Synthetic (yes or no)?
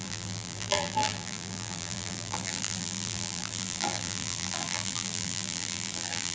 yes